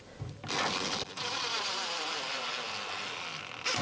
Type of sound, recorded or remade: remade